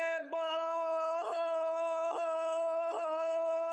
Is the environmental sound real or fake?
fake